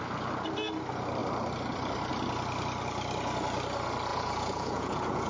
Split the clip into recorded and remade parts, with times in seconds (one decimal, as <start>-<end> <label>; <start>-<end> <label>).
0.0-4.1 recorded; 4.1-5.3 remade